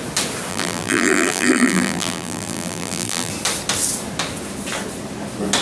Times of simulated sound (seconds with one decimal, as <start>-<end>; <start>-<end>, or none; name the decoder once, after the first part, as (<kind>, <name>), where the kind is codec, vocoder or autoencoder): 0.5-3.3 (vocoder, BigVGAN v2)